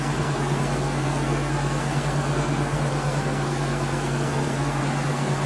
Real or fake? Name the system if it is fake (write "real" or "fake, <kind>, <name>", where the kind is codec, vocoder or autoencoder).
fake, codec, SNAC